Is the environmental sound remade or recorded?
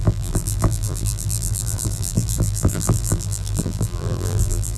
remade